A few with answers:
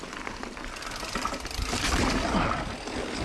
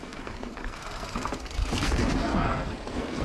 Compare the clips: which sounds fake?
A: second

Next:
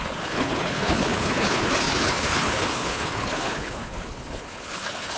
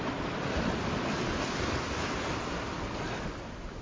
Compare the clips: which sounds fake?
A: first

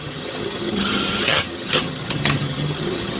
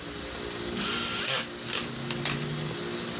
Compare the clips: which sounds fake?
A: first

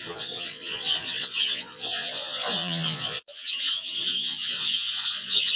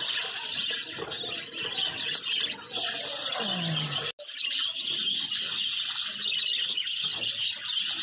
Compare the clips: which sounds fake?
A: first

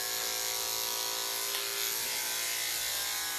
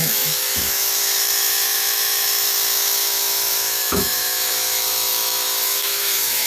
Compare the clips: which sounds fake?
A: second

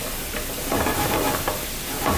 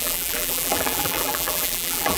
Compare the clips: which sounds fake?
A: second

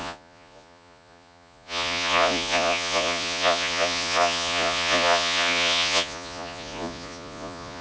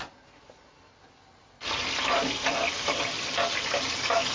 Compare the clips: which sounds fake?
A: first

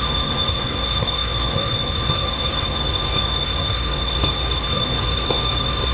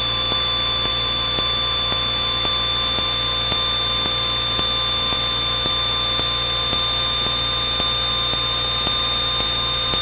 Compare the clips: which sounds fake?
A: first